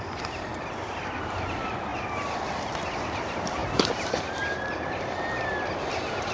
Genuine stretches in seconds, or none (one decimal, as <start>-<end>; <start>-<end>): 0.0-3.6; 4.9-6.3